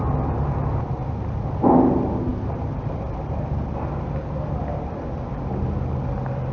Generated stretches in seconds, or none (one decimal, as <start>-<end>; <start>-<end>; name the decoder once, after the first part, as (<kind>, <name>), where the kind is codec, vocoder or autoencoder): none